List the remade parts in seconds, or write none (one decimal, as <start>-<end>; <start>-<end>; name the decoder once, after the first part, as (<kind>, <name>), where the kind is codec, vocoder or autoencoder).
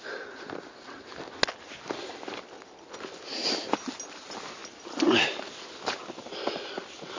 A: none